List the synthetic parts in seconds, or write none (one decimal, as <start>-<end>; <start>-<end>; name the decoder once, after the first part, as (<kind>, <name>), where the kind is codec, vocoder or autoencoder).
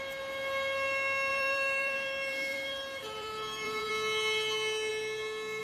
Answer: 1.3-3.9 (vocoder, BigVGAN v2)